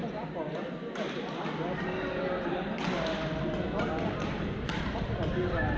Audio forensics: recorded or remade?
recorded